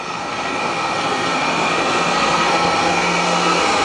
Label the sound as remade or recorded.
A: remade